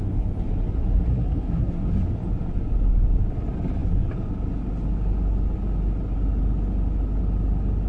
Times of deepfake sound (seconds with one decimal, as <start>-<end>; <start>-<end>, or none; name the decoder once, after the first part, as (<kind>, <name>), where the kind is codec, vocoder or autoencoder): 1.1-1.8 (codec, SNAC)